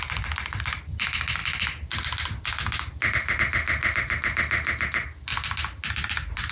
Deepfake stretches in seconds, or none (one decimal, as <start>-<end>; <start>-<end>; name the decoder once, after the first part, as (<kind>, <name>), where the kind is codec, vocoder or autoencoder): none